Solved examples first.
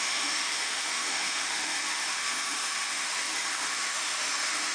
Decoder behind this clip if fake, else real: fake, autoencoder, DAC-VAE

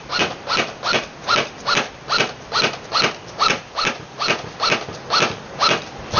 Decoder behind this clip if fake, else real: real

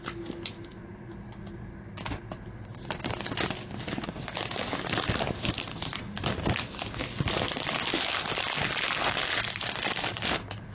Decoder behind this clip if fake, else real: real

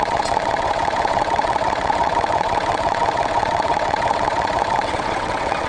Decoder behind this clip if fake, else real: fake, vocoder, WaveNeXt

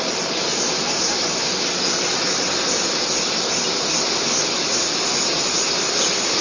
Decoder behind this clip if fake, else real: real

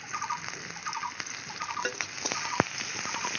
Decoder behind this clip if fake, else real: real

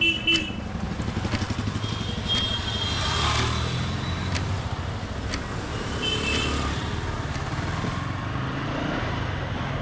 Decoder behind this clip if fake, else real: real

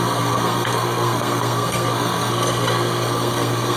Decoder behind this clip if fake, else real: fake, codec, SNAC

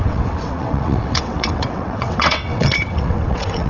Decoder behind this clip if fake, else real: fake, vocoder, WaveNeXt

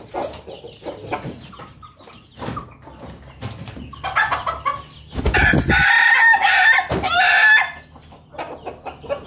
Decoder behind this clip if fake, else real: real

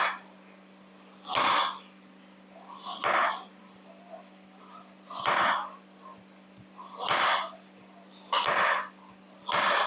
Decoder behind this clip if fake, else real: real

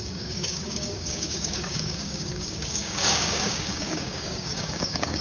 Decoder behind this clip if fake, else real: fake, codec, DAC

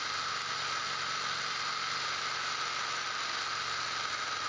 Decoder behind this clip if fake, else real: real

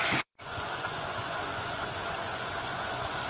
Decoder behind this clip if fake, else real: fake, vocoder, Vocos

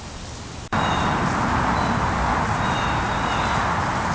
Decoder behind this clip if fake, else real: real